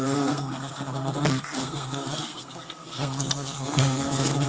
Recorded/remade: remade